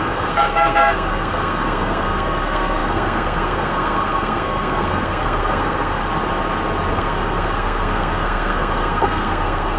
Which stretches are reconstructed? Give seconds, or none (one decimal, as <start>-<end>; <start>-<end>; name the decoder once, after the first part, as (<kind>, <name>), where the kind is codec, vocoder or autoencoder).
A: 0.0-6.0 (codec, SNAC); 6.9-9.8